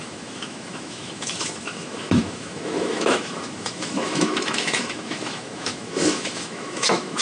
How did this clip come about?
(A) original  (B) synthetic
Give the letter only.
B